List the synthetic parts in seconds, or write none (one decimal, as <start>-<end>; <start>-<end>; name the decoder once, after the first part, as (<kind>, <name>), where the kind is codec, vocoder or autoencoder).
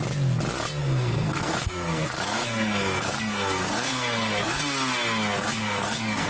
0.8-4.6 (codec, SNAC); 5.3-6.3